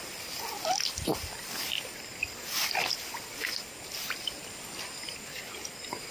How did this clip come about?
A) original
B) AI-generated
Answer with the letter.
A